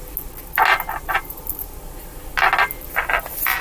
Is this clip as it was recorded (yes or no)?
yes